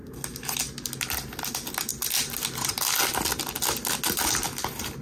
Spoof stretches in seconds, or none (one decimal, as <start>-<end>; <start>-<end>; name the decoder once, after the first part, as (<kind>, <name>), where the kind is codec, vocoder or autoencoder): none